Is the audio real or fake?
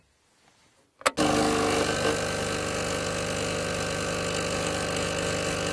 real